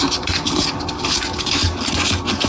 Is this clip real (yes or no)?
yes